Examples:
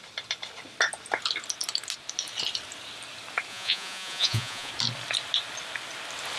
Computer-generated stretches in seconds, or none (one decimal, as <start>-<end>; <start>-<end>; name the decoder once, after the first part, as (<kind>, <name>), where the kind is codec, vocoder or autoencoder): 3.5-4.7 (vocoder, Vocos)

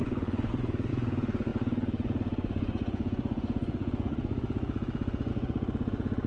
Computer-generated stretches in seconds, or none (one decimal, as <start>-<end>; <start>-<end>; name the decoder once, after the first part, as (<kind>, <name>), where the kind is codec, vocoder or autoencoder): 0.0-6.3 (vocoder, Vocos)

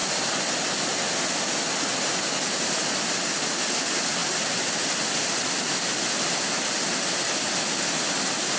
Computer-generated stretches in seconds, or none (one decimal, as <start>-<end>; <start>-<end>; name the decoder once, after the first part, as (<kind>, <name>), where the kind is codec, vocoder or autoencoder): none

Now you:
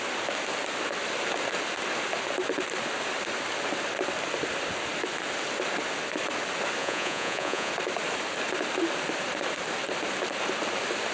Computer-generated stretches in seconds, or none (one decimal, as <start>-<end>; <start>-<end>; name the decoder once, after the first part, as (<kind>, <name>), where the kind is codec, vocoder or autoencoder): 6.8-7.7 (vocoder, Vocos)

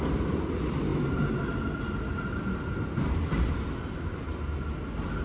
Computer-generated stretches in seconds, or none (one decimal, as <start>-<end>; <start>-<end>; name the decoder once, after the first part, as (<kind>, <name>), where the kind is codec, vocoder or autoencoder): none